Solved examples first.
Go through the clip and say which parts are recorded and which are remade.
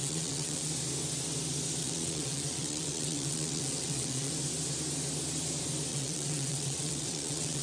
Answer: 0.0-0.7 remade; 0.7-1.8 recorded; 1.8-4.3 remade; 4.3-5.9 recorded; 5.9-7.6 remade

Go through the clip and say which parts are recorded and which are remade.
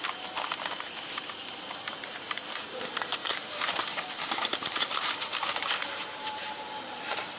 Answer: 0.0-7.4 remade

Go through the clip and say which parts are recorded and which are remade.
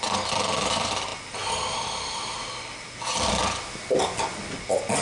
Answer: 0.0-5.0 recorded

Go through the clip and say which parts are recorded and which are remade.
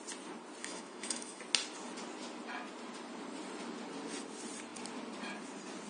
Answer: 0.0-0.6 recorded; 0.6-1.4 remade; 1.4-5.9 recorded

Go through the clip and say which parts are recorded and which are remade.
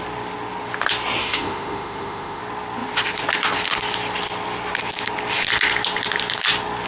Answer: 0.0-1.2 recorded; 1.2-2.4 remade; 2.4-6.9 recorded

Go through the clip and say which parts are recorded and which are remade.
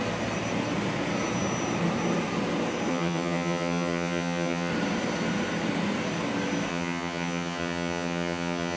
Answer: 0.0-2.9 recorded; 2.9-4.7 remade; 4.7-6.7 recorded; 6.7-8.8 remade